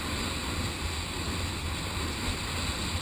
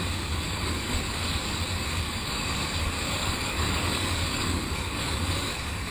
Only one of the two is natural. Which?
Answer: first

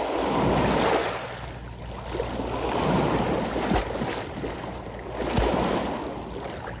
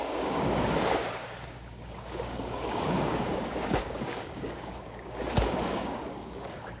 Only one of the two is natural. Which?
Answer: first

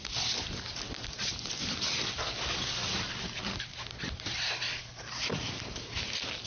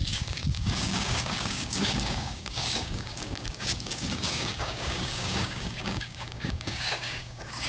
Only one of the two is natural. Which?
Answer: first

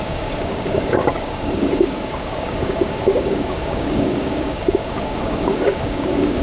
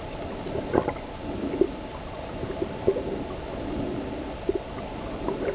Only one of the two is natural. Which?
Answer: second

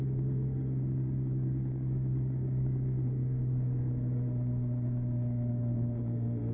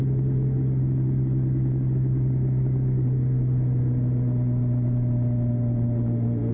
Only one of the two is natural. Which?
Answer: second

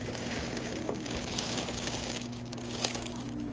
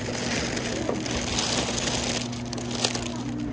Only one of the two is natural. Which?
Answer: second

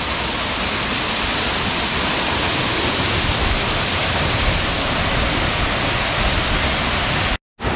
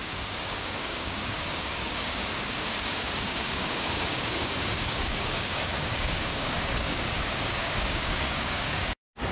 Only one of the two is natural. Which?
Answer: first